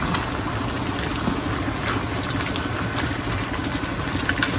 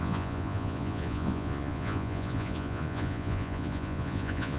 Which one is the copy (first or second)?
second